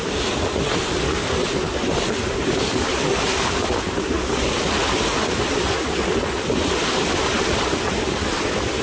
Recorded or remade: recorded